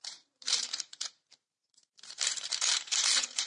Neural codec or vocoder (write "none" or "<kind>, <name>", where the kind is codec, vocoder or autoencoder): vocoder, BigVGAN v2